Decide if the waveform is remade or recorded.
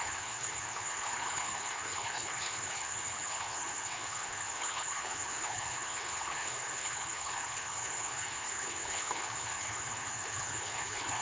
remade